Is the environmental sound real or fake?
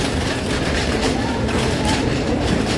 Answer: fake